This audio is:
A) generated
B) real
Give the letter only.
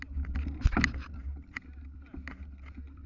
B